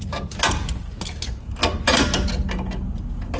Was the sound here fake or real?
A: real